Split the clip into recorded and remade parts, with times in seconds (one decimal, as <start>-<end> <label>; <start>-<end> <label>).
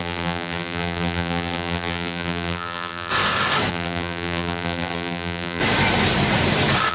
0.0-3.1 remade; 3.1-3.7 recorded; 3.7-5.6 remade; 5.6-6.9 recorded